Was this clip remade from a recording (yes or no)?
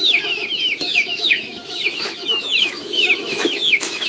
yes